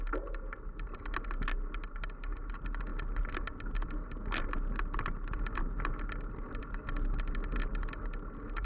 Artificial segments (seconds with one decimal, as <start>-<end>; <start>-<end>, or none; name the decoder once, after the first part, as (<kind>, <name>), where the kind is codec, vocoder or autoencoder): none